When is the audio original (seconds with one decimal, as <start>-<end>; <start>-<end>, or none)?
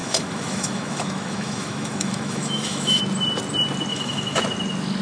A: 3.0-3.9; 4.4-5.0